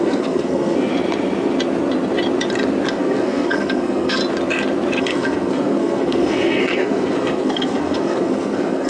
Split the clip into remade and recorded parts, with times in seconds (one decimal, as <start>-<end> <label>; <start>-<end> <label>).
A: 0.0-0.9 remade; 0.9-2.9 recorded; 2.9-4.2 remade; 4.2-5.0 recorded; 5.0-8.9 remade